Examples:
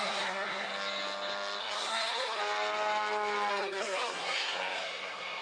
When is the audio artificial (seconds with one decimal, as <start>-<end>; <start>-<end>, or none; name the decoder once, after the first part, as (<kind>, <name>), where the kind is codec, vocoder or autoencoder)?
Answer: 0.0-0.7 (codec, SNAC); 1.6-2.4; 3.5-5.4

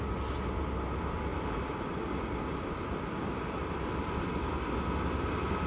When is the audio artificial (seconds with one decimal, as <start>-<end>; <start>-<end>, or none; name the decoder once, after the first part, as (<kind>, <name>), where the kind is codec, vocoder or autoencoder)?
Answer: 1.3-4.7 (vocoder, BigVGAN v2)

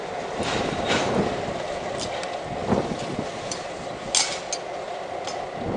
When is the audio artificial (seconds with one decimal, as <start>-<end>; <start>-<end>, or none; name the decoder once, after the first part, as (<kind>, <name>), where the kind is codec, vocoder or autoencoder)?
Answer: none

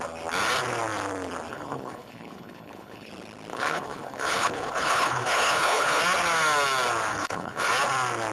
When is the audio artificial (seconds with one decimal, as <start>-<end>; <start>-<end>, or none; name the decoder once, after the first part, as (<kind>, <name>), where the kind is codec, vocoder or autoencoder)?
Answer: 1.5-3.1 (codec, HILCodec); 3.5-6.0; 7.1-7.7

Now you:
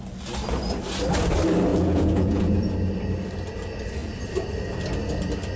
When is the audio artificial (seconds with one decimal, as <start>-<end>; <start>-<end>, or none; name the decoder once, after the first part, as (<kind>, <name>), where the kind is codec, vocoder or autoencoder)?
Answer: 1.7-2.7 (vocoder, Vocos)

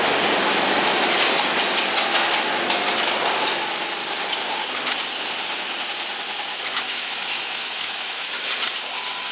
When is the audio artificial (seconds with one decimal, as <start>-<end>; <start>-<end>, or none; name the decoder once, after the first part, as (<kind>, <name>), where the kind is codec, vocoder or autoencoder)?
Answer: 6.5-8.3 (autoencoder, DAC-VAE)

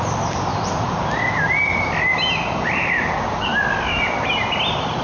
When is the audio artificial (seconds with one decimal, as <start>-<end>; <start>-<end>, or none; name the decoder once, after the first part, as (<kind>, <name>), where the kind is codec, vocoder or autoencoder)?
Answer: 0.5-1.0 (vocoder, BigVGAN v2); 2.1-2.9